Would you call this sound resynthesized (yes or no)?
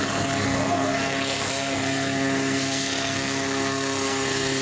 yes